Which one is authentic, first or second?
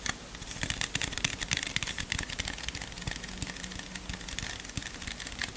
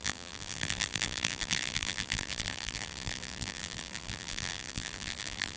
first